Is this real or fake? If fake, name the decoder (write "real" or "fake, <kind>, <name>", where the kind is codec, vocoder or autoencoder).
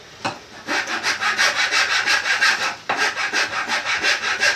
real